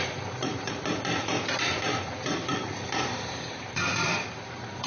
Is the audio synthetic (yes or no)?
yes